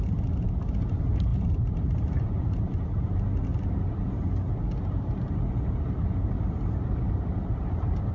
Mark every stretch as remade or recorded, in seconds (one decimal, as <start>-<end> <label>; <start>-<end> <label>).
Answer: 0.0-2.7 remade; 2.7-6.7 recorded; 6.7-8.1 remade